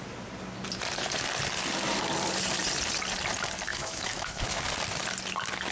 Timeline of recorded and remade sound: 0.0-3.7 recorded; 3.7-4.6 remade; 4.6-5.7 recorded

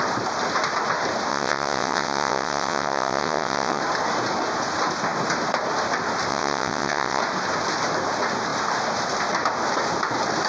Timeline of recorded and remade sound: 0.0-1.3 recorded; 1.3-3.8 remade; 3.8-6.3 recorded; 6.3-7.2 remade; 7.2-10.5 recorded

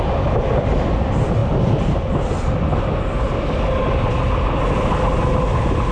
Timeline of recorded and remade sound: 0.0-5.9 recorded

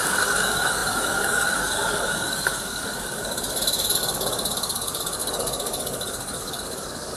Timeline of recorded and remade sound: 0.0-7.2 remade

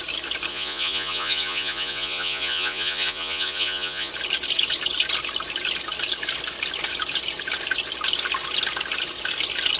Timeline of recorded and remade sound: 0.0-0.5 recorded; 0.5-4.1 remade; 4.1-9.8 recorded

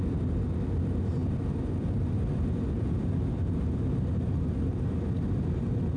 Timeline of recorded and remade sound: 0.0-1.2 recorded; 1.2-3.2 remade; 3.2-6.0 recorded